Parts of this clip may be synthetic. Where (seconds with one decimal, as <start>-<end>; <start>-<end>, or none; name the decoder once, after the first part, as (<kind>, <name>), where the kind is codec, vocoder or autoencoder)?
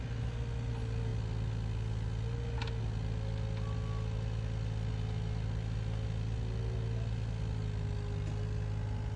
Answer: none